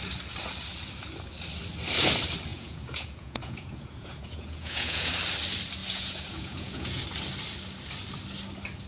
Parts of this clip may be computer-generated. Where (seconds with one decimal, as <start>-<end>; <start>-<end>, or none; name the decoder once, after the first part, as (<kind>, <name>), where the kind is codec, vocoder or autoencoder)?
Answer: 2.5-5.1 (vocoder, Vocos); 5.8-7.0